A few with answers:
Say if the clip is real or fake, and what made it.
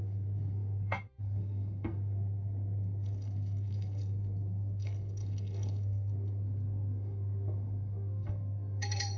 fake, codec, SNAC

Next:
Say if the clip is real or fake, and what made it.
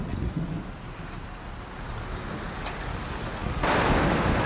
real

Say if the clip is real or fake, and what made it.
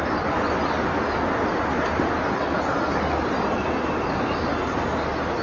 real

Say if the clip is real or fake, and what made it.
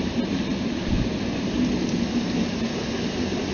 real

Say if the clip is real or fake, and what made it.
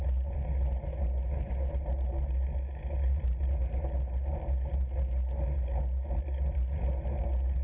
real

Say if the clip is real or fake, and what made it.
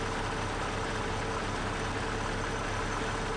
real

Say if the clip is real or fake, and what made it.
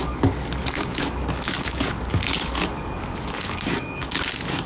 fake, codec, DAC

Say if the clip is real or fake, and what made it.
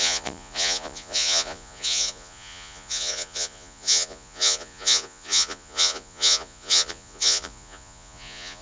fake, vocoder, Vocos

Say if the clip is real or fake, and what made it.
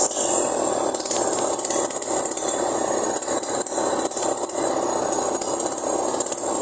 real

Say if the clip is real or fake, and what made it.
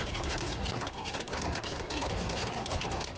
fake, codec, SNAC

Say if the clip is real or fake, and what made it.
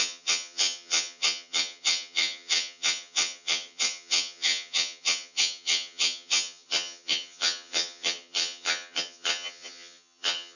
fake, vocoder, HiFi-GAN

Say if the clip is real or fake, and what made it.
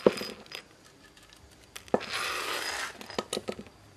real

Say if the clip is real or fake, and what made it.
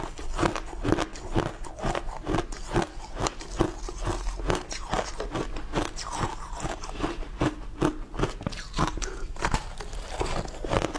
real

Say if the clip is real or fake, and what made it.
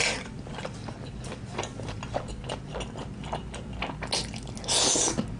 real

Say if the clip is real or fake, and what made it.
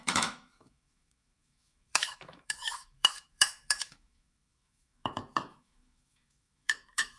fake, autoencoder, DAC-VAE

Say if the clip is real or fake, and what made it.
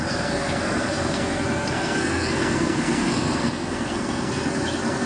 fake, codec, SNAC